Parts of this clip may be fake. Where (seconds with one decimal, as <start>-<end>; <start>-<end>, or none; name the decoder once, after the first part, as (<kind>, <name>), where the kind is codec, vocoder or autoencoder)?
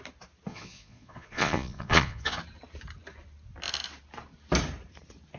0.5-2.4 (vocoder, Vocos)